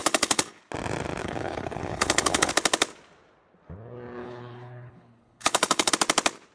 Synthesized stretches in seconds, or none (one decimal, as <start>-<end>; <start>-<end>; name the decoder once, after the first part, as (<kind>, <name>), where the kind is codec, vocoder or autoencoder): 0.0-0.6 (codec, HILCodec); 1.2-2.5; 4.2-5.9